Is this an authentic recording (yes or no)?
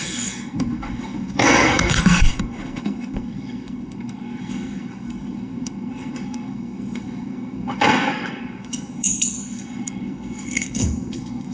no